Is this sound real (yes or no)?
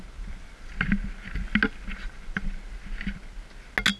yes